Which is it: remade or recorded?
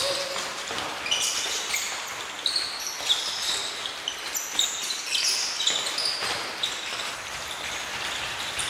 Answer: recorded